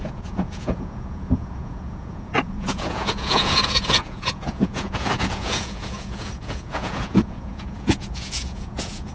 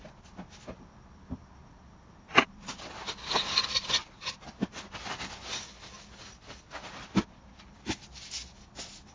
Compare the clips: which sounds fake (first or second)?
first